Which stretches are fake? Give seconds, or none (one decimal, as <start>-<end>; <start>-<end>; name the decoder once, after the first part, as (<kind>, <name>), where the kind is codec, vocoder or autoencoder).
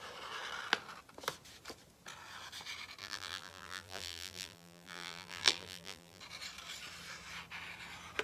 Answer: 3.0-6.2 (vocoder, BigVGAN v2)